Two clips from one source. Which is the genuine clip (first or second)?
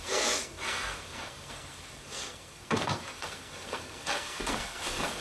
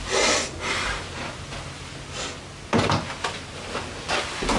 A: second